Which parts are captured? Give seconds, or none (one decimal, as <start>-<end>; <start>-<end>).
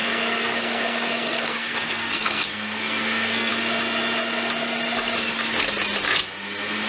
3.5-6.9